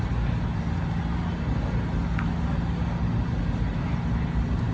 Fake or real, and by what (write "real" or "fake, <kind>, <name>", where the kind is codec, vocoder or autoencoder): real